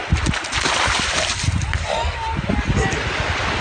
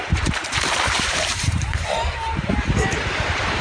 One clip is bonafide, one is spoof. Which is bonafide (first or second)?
first